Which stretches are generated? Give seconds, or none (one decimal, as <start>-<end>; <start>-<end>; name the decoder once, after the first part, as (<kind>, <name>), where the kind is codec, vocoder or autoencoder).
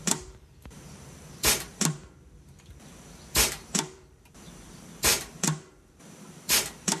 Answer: 0.0-2.0 (vocoder, BigVGAN v2); 3.3-7.0